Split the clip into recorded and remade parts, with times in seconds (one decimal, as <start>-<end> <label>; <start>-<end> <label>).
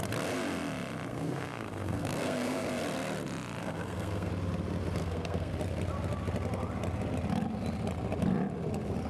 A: 0.0-1.1 recorded; 1.1-2.7 remade; 2.7-3.6 recorded; 3.6-4.3 remade; 4.3-5.0 recorded; 5.0-5.5 remade; 5.5-9.1 recorded